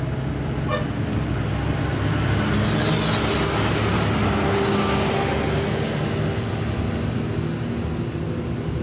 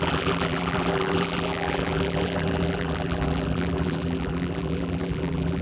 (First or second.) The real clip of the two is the first